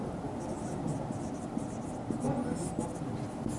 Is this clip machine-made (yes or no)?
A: no